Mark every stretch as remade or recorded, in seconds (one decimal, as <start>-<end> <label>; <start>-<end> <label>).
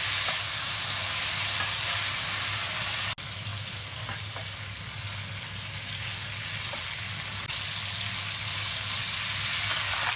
0.0-10.2 recorded